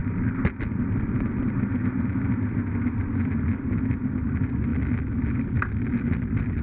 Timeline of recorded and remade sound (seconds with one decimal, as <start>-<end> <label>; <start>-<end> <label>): 0.0-6.6 recorded